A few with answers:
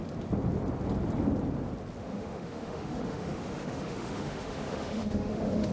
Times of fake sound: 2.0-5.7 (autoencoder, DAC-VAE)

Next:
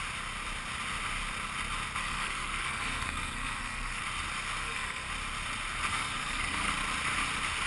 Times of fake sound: 2.0-4.0 (codec, SNAC); 4.6-5.1; 5.9-6.7

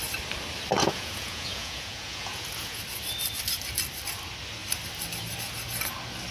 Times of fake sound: 0.7-2.8 (vocoder, Vocos)

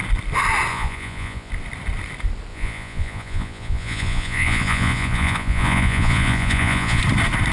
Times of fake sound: 0.7-1.5 (vocoder, Vocos); 2.5-7.0

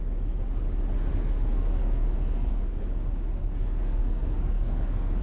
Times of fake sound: 1.1-2.8 (codec, SNAC); 3.4-5.2

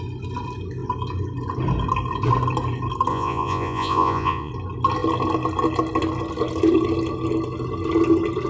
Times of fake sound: 3.1-4.5 (vocoder, Vocos)